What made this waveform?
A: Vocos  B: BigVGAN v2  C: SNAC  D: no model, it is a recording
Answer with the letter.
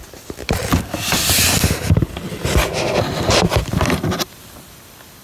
D